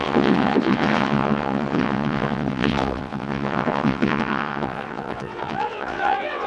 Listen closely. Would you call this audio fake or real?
fake